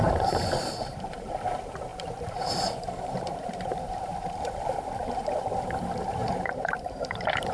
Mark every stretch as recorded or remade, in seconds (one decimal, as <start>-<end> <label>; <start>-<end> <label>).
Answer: 0.0-7.5 remade